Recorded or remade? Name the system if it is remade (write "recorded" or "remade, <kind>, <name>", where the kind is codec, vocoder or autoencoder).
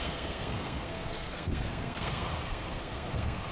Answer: remade, codec, SNAC